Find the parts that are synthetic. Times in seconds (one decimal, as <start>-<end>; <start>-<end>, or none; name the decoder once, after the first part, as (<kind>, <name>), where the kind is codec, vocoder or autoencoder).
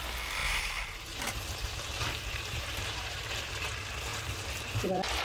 0.4-3.5 (vocoder, BigVGAN v2); 4.1-4.7